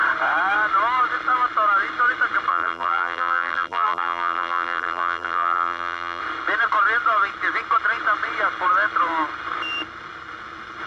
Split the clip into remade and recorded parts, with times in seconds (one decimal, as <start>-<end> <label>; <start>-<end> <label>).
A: 0.0-2.5 recorded; 2.5-6.2 remade; 6.2-10.9 recorded